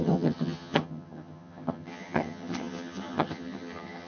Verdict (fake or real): fake